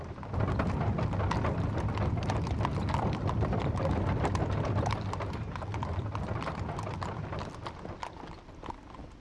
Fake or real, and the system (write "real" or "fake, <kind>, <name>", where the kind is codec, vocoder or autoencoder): real